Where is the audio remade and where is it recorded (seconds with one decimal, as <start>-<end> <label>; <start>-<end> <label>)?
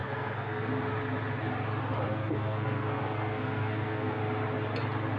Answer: 0.0-0.7 remade; 0.7-2.1 recorded; 2.1-4.2 remade; 4.2-5.2 recorded